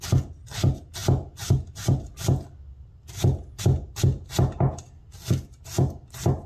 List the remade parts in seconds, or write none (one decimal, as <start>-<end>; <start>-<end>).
none